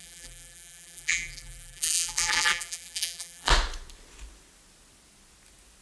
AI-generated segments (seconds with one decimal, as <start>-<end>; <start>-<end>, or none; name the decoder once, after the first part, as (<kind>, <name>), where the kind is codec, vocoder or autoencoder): 0.0-3.5 (vocoder, BigVGAN v2)